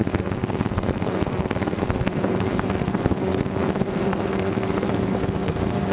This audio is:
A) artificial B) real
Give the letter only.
A